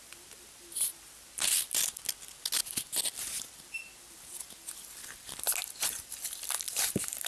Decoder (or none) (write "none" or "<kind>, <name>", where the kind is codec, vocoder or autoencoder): none